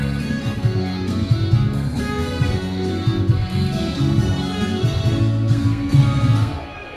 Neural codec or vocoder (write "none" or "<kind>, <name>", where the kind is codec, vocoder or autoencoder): codec, SNAC